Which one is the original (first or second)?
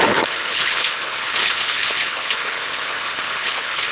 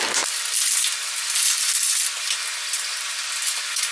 second